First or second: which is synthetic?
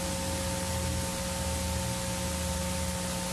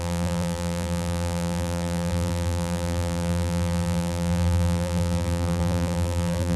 second